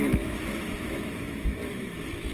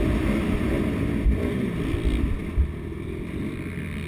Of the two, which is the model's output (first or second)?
first